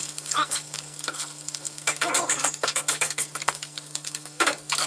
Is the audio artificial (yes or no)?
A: yes